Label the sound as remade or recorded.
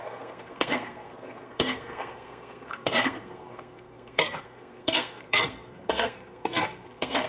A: remade